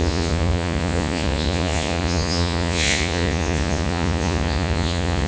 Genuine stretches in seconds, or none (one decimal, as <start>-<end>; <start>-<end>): none